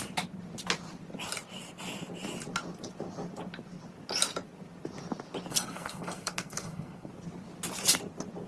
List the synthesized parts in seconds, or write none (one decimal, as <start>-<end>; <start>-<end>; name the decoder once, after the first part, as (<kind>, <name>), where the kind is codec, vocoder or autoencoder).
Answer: 5.5-7.1 (codec, SNAC)